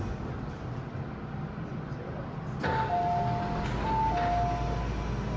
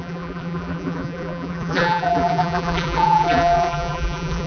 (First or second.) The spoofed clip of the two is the second